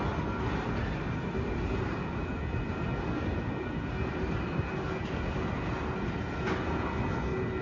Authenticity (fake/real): real